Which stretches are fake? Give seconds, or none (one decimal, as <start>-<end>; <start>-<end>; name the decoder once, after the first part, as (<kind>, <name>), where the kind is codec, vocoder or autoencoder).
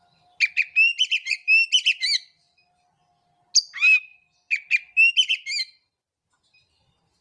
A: none